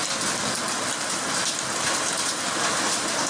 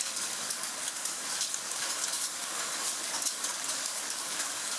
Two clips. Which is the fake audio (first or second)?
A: second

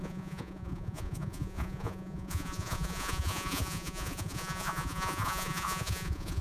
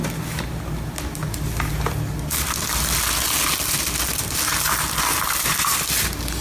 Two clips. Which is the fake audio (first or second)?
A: first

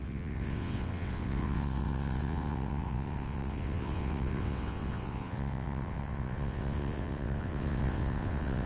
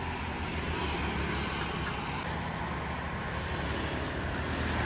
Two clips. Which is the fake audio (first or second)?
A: first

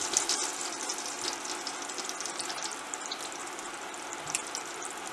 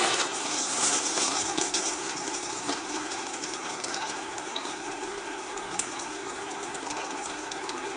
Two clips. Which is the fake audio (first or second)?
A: second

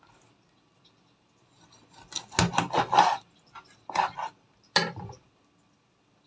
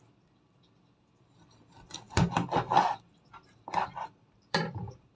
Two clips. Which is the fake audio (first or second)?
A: second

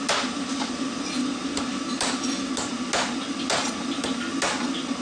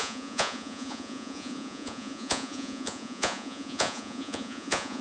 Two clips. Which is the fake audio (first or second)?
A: second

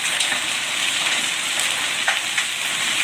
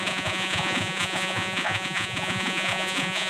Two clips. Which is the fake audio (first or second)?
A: second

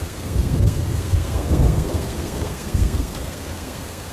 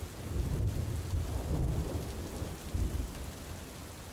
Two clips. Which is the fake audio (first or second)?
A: first